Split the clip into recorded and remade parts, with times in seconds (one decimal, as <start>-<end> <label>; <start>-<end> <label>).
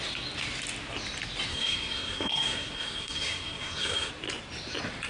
0.0-1.5 recorded; 1.5-4.1 remade; 4.1-5.1 recorded